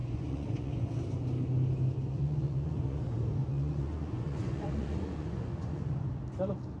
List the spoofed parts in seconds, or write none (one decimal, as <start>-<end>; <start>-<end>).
0.0-0.9; 2.1-3.0; 3.4-6.0